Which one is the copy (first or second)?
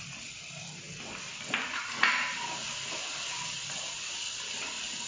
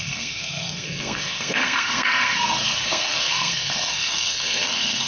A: second